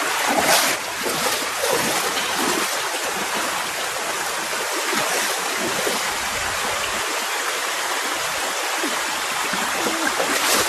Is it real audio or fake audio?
real